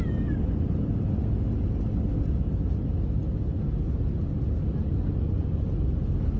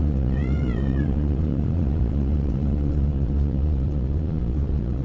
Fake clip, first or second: second